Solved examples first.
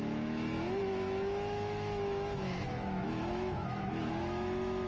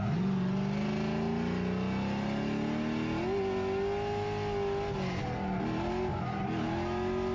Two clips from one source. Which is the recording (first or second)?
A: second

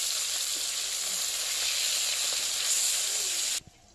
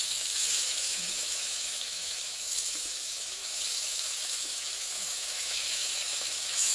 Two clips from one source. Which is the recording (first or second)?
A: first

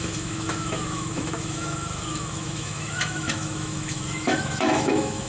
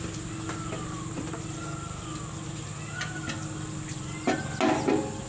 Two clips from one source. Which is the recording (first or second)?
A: second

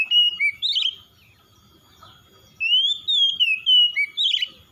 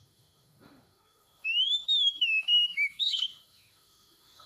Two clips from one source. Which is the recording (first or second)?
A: first